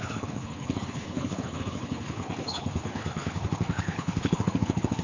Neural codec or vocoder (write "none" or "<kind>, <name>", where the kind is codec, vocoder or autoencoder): codec, HILCodec